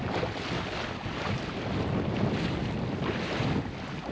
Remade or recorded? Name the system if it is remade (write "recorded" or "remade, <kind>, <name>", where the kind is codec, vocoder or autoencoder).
recorded